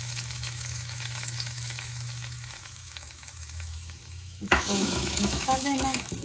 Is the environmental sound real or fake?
fake